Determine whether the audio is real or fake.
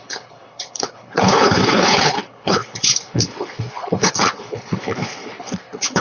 fake